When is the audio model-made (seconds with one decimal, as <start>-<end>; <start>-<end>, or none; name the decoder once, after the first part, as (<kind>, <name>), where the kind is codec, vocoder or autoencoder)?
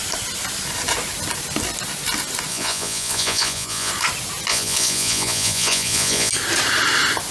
2.5-3.9 (vocoder, Vocos); 4.5-6.3